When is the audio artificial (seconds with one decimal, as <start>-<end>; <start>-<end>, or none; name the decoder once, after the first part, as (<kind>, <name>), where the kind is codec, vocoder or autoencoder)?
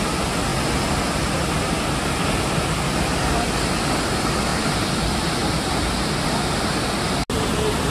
4.5-5.0 (vocoder, BigVGAN v2); 5.4-6.3